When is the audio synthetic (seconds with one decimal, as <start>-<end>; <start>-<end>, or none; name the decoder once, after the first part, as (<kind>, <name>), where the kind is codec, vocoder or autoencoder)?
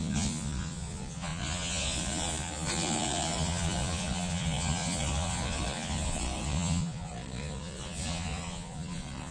0.0-9.3 (vocoder, Vocos)